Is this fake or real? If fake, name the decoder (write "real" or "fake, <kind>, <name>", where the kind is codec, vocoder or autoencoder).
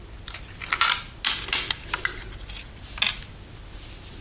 real